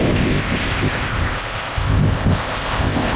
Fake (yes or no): yes